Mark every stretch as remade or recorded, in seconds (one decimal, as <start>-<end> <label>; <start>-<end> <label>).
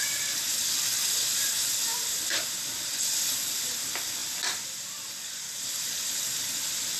0.0-1.9 recorded; 1.9-3.1 remade; 3.1-4.2 recorded; 4.2-7.0 remade